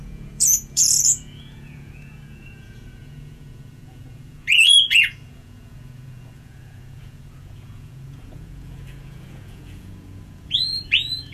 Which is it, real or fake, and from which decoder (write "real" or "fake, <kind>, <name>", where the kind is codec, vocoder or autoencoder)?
fake, vocoder, Vocos